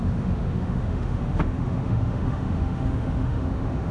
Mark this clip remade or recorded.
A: remade